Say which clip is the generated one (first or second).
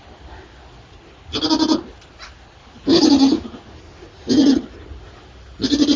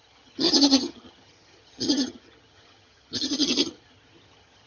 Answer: second